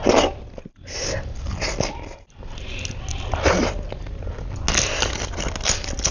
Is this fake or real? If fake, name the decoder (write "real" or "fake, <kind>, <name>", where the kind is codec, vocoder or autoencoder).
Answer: real